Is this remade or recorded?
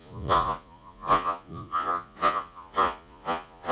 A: remade